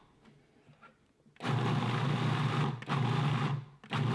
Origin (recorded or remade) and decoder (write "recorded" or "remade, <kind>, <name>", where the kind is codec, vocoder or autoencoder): recorded